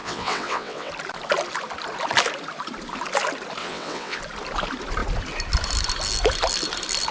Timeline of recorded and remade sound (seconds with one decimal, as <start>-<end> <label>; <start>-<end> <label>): 0.0-0.9 remade; 0.9-3.6 recorded; 3.6-4.2 remade; 4.2-7.1 recorded